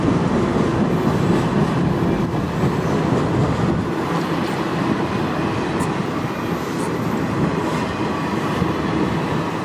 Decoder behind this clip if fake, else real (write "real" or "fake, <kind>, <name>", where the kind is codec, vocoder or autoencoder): real